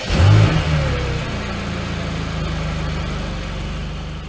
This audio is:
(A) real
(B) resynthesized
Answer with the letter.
A